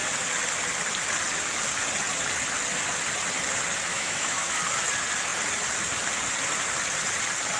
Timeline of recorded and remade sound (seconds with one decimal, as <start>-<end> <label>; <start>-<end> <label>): 0.0-3.9 recorded; 3.9-4.6 remade; 4.6-7.6 recorded